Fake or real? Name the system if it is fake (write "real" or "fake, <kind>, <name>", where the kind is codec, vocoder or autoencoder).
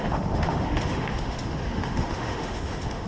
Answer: fake, autoencoder, DAC-VAE